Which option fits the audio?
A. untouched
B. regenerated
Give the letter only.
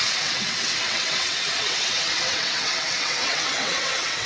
B